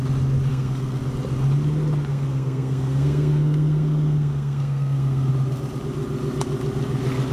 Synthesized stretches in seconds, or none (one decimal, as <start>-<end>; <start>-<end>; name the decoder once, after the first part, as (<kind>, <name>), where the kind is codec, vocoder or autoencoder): 0.5-1.0 (codec, SNAC); 2.1-5.3